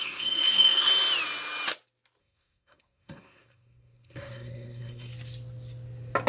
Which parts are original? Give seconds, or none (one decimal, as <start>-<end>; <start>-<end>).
0.9-2.2; 5.1-6.3